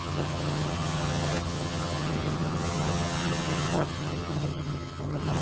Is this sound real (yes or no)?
no